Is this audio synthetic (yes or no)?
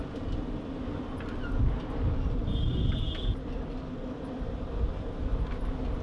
no